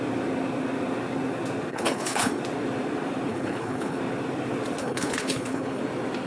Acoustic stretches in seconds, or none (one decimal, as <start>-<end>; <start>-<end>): 0.0-1.7; 2.4-3.3; 4.0-4.8; 5.8-6.3